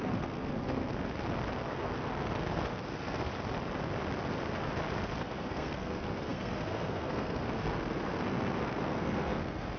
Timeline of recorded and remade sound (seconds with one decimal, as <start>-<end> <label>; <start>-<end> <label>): 0.0-0.9 remade; 0.9-1.6 recorded; 1.6-3.3 remade; 3.3-5.2 recorded; 5.2-9.8 remade